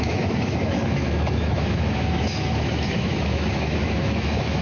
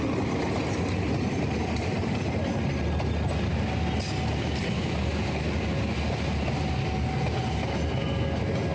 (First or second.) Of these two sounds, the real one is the second